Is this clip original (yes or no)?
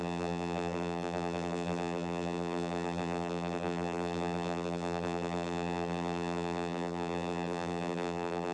no